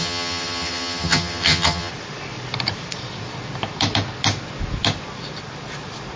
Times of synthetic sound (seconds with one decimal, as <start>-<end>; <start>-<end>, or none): 0.0-1.9